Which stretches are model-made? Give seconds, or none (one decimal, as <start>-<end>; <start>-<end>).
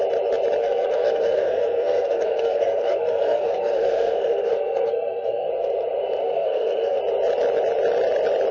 0.6-5.5; 6.2-7.0